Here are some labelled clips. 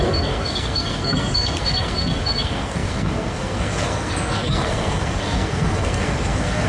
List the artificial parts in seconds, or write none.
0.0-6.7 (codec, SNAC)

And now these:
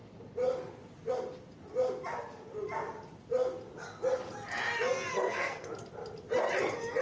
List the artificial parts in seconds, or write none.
5.1-5.7 (codec, SNAC)

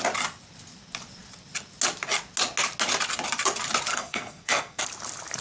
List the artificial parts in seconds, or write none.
3.9-4.8 (codec, SNAC)

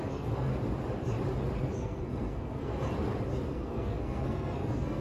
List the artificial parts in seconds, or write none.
0.0-0.5 (codec, SNAC); 1.6-2.7; 3.5-5.0

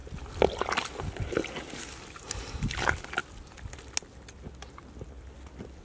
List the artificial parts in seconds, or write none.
none

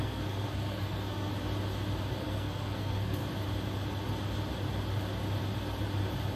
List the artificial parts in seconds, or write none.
0.0-1.3 (codec, SNAC); 2.2-3.2

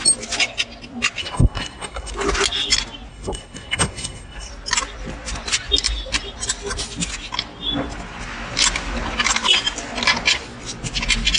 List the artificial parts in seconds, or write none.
1.2-2.1 (codec, SNAC); 3.1-4.5

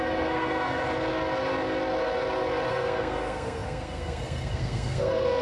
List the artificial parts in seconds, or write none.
0.0-0.8 (codec, SNAC); 2.7-5.4